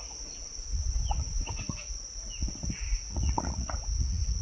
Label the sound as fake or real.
fake